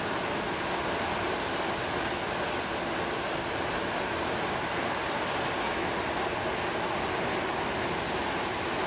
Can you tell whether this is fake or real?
real